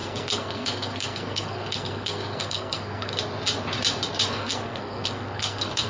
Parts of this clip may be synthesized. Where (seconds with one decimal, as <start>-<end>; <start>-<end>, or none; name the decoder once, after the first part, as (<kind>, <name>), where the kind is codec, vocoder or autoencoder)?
0.0-3.1 (codec, SNAC); 4.3-5.9